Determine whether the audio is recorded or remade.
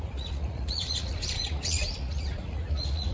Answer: remade